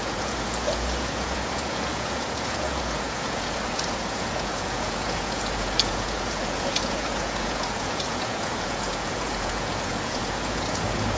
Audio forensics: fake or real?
fake